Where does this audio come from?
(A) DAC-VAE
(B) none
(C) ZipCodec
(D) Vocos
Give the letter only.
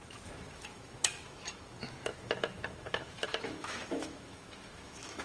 A